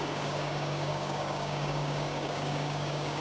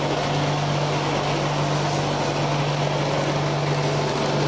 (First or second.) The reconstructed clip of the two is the first